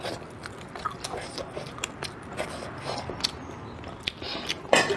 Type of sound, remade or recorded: recorded